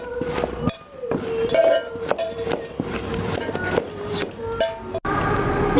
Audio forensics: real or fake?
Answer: real